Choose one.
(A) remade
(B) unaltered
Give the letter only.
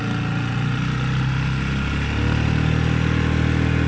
B